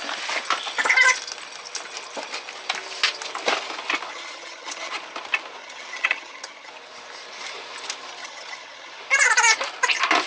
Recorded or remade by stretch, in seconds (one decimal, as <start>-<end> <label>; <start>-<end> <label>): 0.0-4.1 recorded; 4.1-4.9 remade; 4.9-5.6 recorded; 5.6-6.7 remade; 6.7-8.2 recorded; 8.2-9.0 remade; 9.0-10.3 recorded